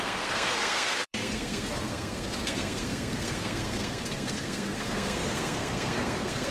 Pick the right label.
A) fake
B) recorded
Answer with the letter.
A